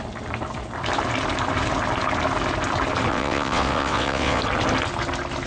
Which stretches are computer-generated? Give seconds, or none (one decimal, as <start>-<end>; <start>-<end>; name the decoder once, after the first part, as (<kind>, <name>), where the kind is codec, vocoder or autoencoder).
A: 3.1-4.4 (vocoder, WaveNeXt)